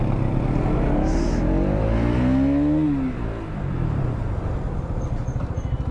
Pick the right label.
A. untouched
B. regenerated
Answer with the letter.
A